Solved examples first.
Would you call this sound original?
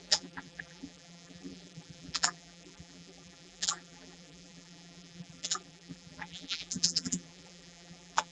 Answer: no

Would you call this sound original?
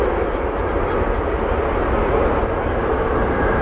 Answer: yes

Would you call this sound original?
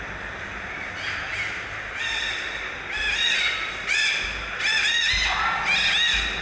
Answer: yes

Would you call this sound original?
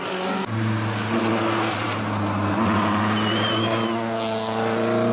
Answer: yes